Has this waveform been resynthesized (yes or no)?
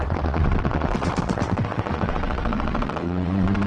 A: yes